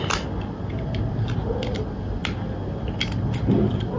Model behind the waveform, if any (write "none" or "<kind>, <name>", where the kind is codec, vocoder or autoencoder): none